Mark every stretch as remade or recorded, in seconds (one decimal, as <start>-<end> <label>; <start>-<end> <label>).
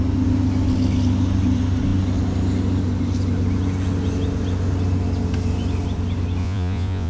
0.0-6.4 recorded; 6.4-7.1 remade